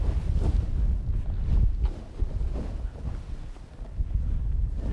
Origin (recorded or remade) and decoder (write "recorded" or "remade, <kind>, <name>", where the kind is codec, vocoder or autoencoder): recorded